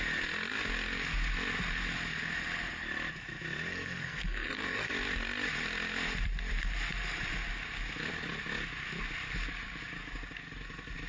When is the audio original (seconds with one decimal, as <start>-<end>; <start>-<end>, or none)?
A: 0.0-3.7; 4.9-11.1